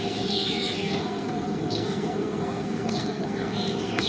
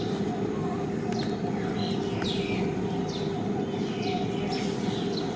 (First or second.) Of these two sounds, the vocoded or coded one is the first